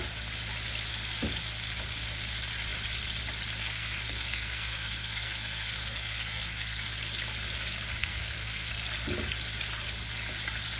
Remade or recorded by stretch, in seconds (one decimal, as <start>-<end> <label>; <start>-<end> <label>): 0.0-3.6 recorded; 3.6-6.9 remade; 6.9-8.0 recorded; 8.0-8.7 remade; 8.7-10.8 recorded